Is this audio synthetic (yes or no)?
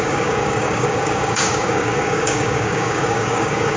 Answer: yes